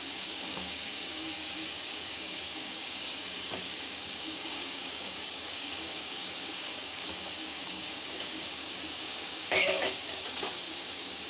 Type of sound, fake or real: fake